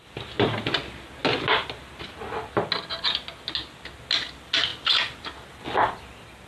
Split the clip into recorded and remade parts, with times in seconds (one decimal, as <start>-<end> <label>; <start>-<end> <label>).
0.0-6.5 recorded